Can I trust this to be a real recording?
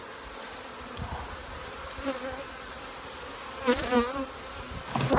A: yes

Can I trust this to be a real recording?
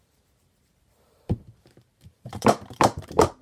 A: no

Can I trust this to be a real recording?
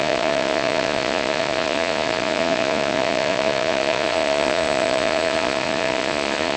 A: no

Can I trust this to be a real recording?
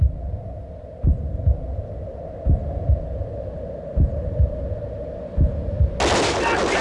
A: yes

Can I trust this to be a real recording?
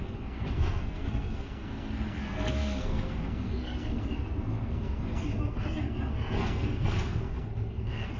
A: no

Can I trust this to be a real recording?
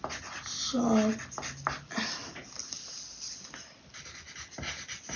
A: yes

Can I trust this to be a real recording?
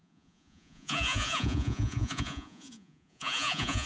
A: no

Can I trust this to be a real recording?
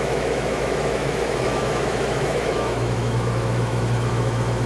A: no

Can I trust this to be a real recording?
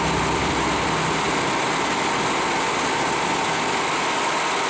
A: yes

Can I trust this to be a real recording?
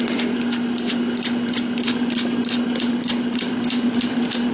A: yes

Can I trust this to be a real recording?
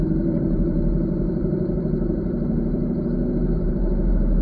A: no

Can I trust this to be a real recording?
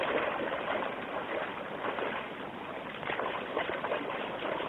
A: yes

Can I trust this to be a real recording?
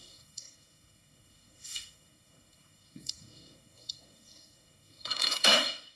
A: no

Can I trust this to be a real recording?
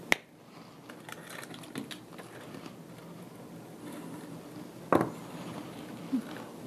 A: yes